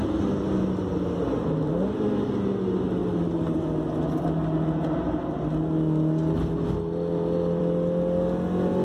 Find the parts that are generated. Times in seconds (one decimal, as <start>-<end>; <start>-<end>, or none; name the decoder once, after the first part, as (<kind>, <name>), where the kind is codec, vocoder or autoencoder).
none